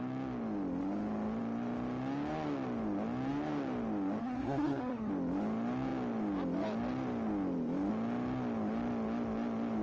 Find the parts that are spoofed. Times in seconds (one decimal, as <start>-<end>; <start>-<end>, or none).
4.2-5.1